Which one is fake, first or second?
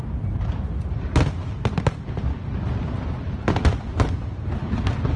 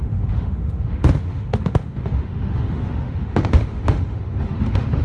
second